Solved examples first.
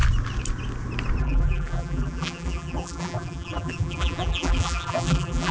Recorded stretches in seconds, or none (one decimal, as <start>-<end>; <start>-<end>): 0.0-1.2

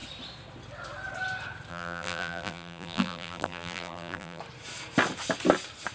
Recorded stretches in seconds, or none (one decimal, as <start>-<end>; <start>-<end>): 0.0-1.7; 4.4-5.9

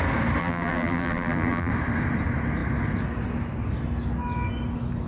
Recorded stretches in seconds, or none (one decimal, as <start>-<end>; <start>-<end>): 0.0-0.4; 1.7-5.1

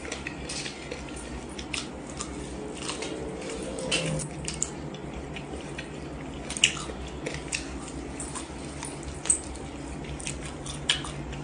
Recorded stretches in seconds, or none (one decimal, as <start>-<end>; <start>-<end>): 0.0-3.1; 4.0-5.0; 5.7-11.4

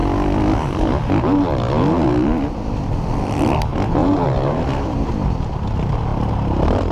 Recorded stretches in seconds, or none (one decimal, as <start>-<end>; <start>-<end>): 0.0-4.0; 5.1-6.1

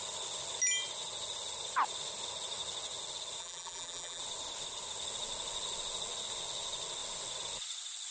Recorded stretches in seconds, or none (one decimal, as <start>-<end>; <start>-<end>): 0.0-3.4; 4.2-8.1

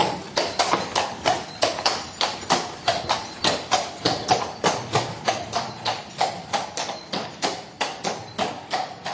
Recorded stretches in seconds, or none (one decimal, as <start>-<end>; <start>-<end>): none